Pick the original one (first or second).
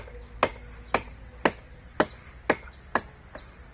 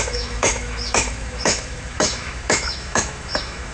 first